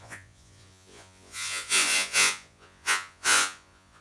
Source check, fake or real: fake